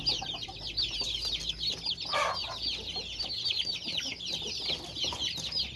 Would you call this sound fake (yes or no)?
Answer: no